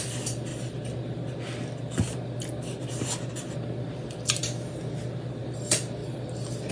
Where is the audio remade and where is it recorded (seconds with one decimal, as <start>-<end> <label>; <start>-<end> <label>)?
0.0-6.7 recorded